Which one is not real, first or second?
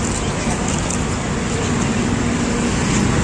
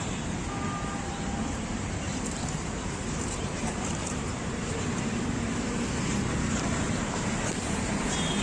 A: second